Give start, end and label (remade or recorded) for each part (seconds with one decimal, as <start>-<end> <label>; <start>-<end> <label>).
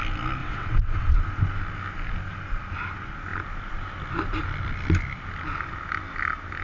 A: 0.0-0.4 recorded; 0.4-1.2 remade; 1.2-6.6 recorded